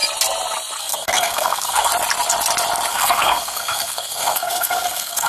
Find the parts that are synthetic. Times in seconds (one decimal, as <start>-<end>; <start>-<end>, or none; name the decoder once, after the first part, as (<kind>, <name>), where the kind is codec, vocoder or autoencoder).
0.8-1.9 (codec, SNAC); 2.9-5.3